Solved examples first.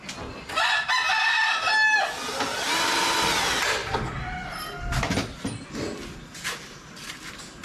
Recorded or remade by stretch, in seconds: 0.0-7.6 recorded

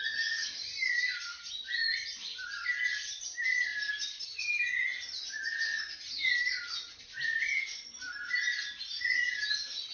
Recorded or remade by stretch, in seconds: 0.0-9.9 recorded

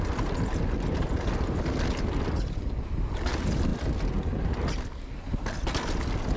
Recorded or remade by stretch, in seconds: 0.0-6.4 recorded

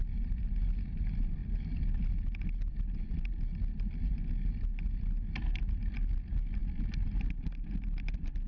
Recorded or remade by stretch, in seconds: 0.0-8.5 recorded

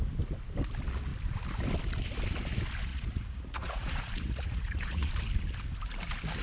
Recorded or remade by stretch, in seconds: 0.0-2.9 recorded; 2.9-5.1 remade; 5.1-6.4 recorded

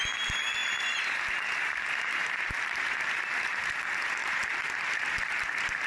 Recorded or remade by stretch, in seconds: 0.0-0.6 recorded; 0.6-3.1 remade; 3.1-4.2 recorded; 4.2-4.8 remade; 4.8-5.9 recorded

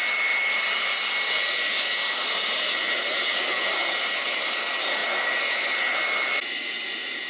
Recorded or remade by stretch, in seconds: 0.0-7.3 recorded